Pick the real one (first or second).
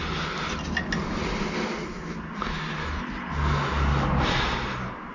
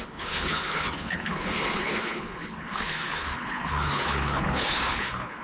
first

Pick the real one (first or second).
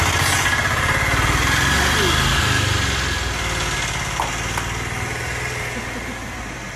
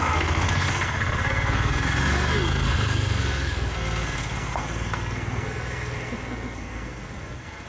first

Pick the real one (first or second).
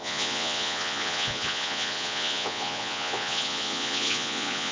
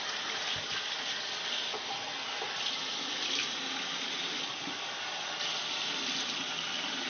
second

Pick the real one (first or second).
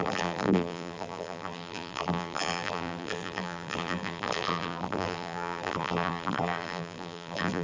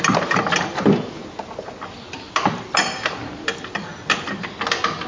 second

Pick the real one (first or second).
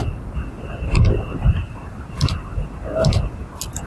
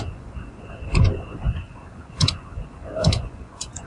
first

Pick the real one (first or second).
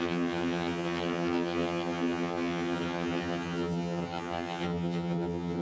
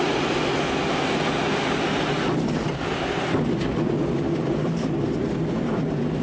second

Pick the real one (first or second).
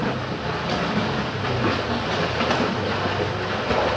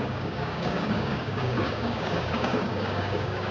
first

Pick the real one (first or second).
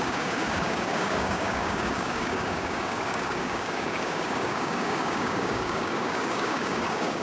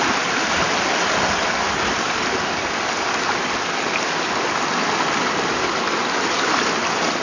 second